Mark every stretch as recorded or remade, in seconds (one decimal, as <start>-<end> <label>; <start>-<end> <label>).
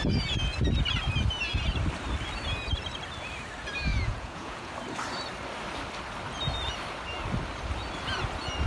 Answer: 0.0-3.9 recorded; 3.9-4.7 remade; 4.7-8.7 recorded